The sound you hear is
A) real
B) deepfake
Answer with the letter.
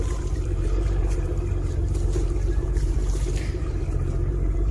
B